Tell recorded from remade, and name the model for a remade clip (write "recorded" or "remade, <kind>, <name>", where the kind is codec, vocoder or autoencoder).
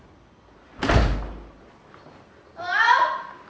recorded